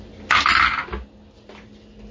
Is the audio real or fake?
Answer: real